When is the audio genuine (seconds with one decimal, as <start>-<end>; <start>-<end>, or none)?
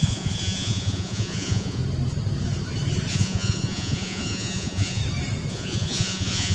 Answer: 1.8-3.1; 5.0-5.5